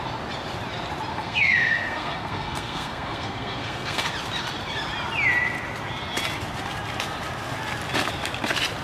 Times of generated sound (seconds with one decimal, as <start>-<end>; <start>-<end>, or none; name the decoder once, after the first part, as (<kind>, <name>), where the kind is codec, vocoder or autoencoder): 1.1-4.1 (codec, SNAC)